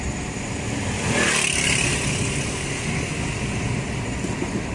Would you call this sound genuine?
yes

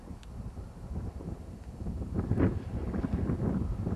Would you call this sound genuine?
yes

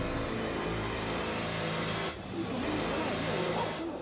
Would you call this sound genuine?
no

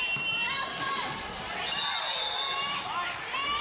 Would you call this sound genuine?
yes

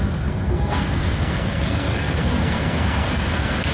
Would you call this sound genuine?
no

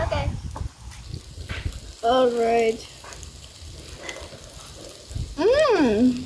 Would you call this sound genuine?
yes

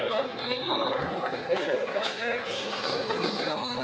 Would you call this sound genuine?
no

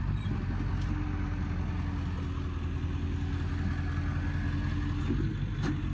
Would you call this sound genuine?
yes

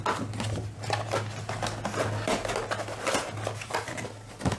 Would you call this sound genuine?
yes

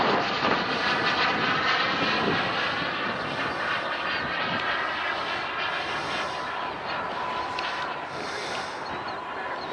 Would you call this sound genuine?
yes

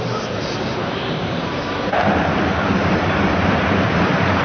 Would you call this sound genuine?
no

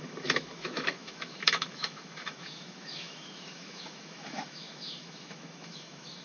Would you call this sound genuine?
no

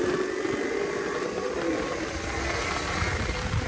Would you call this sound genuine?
yes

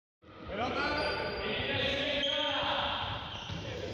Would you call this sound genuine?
no